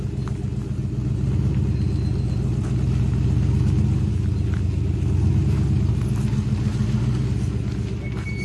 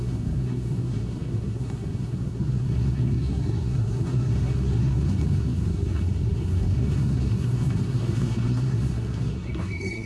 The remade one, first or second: second